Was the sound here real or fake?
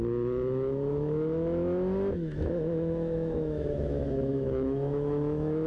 fake